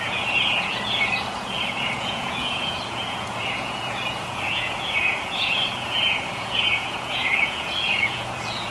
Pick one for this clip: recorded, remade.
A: remade